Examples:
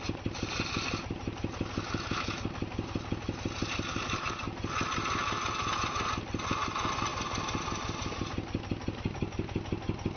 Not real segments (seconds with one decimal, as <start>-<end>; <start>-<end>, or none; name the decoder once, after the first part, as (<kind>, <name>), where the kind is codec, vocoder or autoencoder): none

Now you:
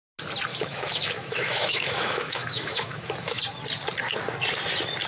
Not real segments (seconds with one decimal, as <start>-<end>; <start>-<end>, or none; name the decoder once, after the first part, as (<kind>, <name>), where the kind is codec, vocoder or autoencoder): 0.5-3.4 (autoencoder, DAC-VAE)

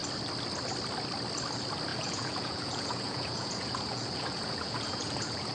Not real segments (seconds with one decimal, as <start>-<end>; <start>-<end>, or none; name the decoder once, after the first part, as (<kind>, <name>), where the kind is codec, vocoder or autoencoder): 1.9-5.5 (vocoder, Vocos)

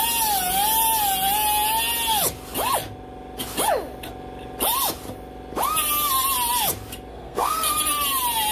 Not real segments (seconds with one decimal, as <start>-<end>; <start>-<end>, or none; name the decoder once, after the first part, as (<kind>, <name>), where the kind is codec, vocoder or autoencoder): 7.1-7.7 (codec, SNAC)